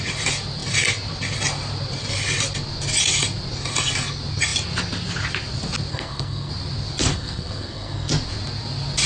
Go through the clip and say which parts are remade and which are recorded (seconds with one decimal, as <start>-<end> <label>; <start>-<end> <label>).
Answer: 0.0-5.9 recorded; 5.9-6.5 remade; 6.5-7.1 recorded; 7.1-8.1 remade; 8.1-9.1 recorded